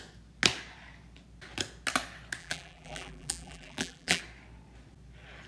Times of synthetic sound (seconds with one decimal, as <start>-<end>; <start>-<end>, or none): 2.4-4.2